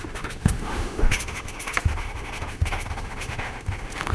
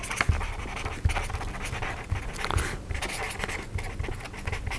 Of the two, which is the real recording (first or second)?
second